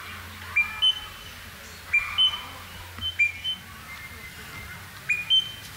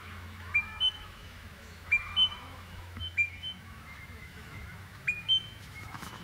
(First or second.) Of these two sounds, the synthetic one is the second